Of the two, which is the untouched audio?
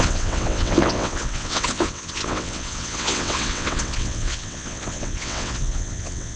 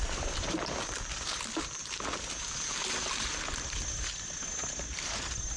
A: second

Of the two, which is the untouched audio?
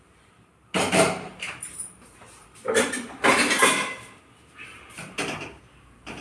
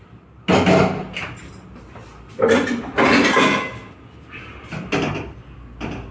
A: second